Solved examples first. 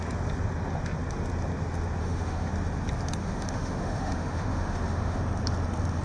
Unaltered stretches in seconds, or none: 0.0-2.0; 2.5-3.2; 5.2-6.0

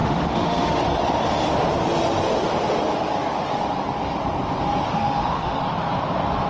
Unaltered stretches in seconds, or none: 0.8-4.9; 5.6-6.5

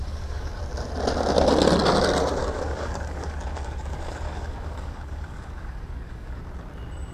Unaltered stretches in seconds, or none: 0.6-2.4; 6.4-7.1

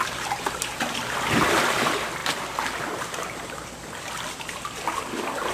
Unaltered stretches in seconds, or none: none

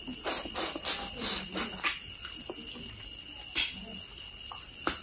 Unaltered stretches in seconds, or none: 0.0-5.0

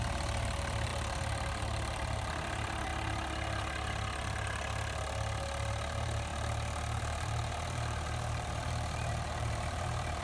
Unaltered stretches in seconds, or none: 2.9-5.7; 6.3-7.0

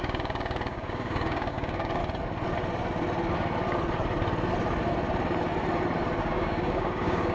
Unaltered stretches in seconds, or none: 2.0-6.2

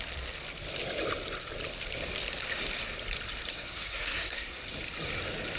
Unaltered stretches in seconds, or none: 0.0-3.5; 4.6-5.6